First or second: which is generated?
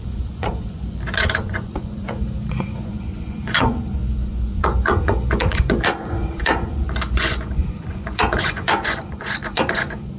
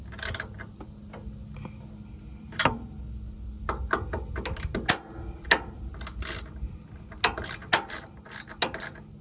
first